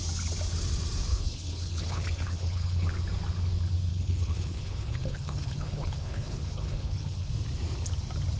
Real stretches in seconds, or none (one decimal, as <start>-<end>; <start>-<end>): 0.0-1.1; 2.9-3.9; 7.3-8.4

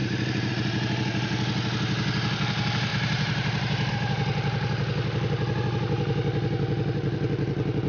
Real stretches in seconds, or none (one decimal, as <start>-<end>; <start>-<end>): 0.5-2.9; 3.9-7.9

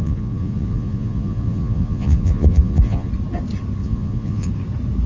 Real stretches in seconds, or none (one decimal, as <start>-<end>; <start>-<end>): 3.1-3.8; 4.5-5.1

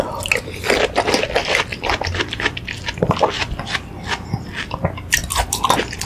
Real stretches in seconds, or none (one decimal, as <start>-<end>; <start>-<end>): 0.0-6.1

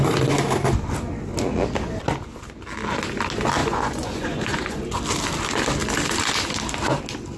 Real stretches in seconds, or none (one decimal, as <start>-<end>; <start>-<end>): 0.0-3.6; 4.9-7.4

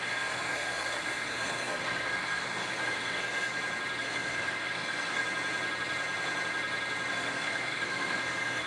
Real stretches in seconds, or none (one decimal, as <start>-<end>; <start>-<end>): 3.5-4.0; 5.2-7.1